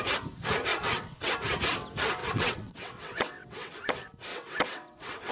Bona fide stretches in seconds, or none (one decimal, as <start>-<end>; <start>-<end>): 0.0-0.7; 1.3-2.2; 3.7-4.3